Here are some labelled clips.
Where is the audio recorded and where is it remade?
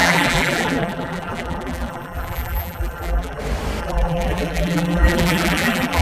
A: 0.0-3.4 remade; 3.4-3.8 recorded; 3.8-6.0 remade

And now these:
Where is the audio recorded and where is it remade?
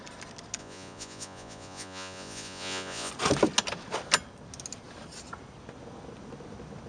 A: 0.0-0.6 recorded; 0.6-3.1 remade; 3.1-6.9 recorded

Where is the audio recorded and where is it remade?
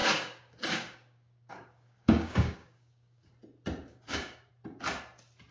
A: 0.0-3.3 remade; 3.3-3.9 recorded; 3.9-4.5 remade; 4.5-5.5 recorded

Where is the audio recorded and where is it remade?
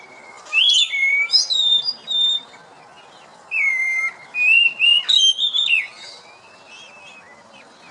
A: 0.0-7.9 recorded